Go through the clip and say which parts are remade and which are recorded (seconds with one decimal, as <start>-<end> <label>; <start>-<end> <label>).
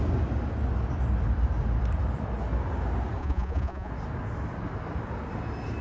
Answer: 0.0-3.2 recorded; 3.2-3.9 remade; 3.9-5.8 recorded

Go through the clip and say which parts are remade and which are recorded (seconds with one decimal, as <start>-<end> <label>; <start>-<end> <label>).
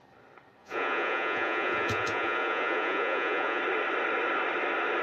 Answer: 0.0-0.6 recorded; 0.6-3.6 remade; 3.6-5.0 recorded